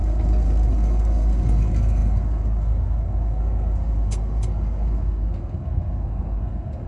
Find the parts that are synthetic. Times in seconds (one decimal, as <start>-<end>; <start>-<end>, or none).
0.0-6.9